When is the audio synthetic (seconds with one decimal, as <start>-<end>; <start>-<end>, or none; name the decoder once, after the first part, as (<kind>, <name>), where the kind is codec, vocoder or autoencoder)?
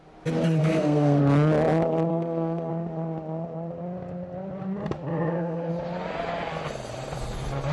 0.6-1.2 (codec, SNAC); 2.1-2.7; 5.1-5.7